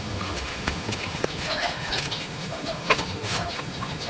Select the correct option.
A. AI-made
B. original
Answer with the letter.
A